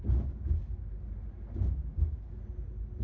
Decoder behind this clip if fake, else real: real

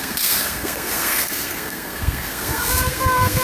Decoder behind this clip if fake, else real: fake, codec, SNAC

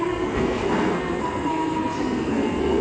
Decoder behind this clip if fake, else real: fake, codec, SNAC